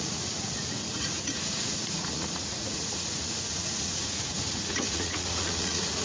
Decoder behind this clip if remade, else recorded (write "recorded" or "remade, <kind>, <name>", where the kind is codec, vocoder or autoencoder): remade, vocoder, Vocos